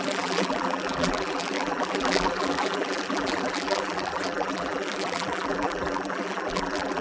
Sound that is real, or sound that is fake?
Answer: fake